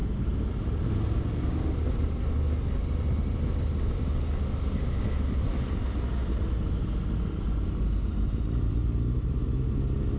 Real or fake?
real